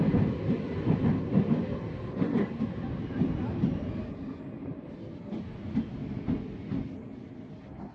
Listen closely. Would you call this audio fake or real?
real